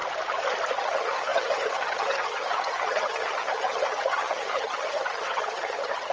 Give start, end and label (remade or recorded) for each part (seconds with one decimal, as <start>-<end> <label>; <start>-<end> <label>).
0.0-0.8 recorded; 0.8-6.1 remade